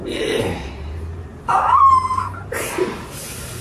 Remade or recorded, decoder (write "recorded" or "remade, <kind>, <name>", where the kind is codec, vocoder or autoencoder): remade, vocoder, BigVGAN v2